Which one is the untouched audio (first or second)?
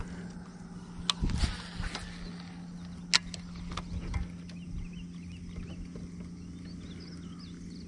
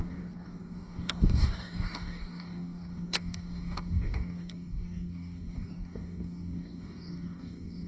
first